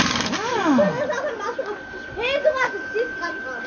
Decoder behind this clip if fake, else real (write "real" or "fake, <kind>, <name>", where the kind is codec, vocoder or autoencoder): real